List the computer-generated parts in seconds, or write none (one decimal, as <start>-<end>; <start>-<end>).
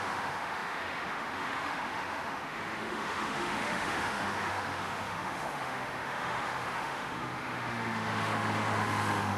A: 0.0-9.4